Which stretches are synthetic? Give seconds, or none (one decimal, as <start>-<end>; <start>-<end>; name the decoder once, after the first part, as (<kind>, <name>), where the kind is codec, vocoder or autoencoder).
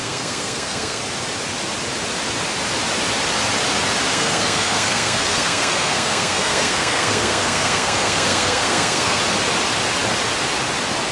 0.0-1.0 (codec, SNAC); 4.1-9.2